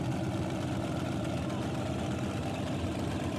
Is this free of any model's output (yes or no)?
yes